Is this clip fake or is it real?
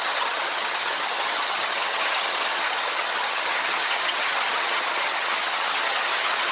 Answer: fake